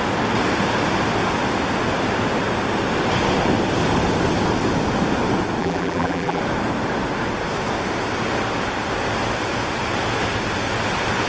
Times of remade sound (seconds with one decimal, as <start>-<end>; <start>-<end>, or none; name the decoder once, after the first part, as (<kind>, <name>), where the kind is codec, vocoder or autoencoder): 5.6-6.4 (vocoder, BigVGAN v2)